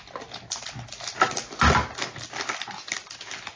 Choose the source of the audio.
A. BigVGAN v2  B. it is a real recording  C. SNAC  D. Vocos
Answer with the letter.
B